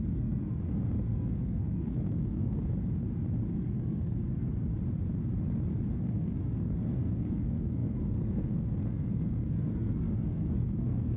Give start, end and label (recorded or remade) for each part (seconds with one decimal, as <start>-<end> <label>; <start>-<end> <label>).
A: 0.0-2.6 remade; 2.6-3.6 recorded; 3.6-4.7 remade; 4.7-6.0 recorded; 6.0-11.2 remade